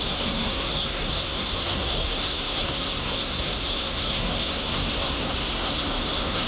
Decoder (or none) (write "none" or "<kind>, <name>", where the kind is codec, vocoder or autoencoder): codec, SNAC